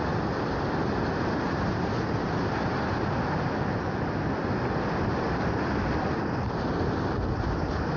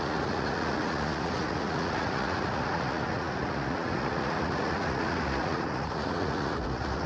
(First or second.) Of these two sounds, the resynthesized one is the second